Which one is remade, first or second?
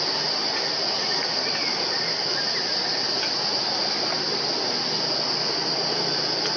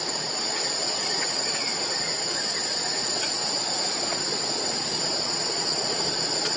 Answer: second